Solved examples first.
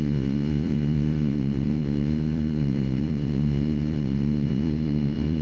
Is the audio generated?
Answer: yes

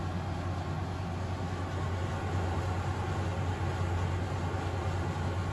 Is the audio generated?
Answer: no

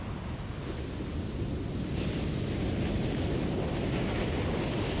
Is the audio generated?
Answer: no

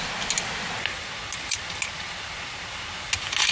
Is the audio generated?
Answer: no